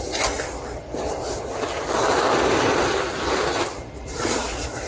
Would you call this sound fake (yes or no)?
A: no